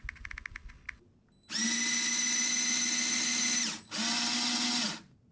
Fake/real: real